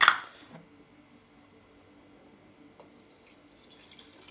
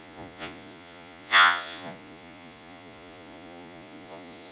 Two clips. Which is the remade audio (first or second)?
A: second